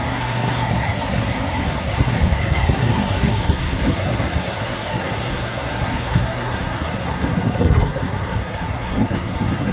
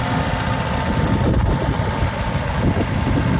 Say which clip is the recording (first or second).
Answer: second